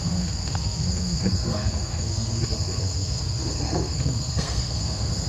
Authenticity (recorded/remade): remade